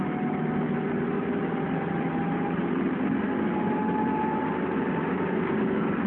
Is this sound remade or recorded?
recorded